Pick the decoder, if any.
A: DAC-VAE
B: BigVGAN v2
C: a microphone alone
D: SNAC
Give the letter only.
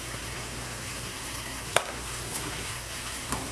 D